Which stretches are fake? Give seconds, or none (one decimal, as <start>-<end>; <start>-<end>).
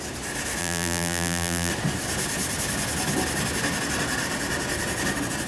0.6-1.7